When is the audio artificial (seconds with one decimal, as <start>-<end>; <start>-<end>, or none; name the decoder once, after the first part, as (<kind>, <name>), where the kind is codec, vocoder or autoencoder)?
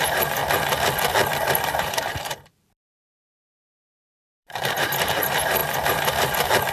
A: 0.0-0.4 (vocoder, BigVGAN v2); 1.8-6.7